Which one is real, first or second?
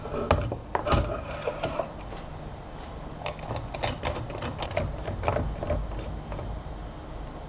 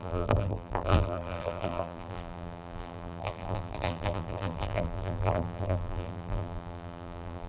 first